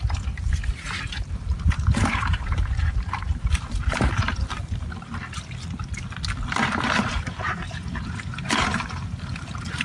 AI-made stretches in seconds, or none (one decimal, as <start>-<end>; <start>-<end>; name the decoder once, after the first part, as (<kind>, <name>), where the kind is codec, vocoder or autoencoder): 0.0-5.1 (vocoder, BigVGAN v2); 7.0-9.8